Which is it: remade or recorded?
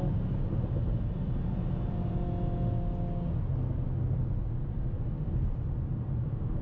recorded